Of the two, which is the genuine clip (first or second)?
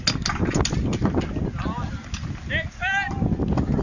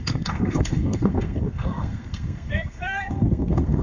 first